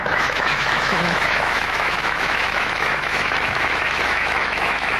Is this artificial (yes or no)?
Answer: yes